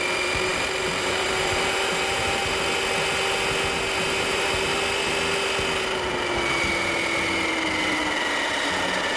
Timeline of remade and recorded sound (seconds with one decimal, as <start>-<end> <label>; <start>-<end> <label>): 0.0-2.4 remade; 2.4-4.0 recorded; 4.0-4.7 remade; 4.7-9.2 recorded